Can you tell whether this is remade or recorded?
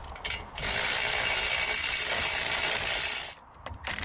remade